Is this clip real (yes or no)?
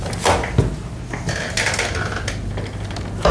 yes